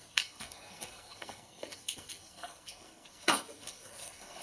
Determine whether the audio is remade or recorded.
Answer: remade